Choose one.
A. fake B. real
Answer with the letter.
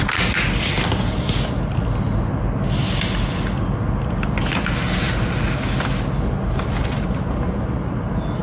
B